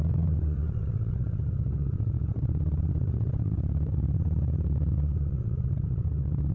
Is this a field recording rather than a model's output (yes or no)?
no